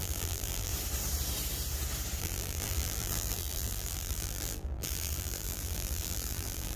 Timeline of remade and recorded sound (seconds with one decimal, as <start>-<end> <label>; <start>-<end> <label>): 0.0-0.7 remade; 0.7-2.2 recorded; 2.2-6.8 remade